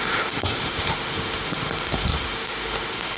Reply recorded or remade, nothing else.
remade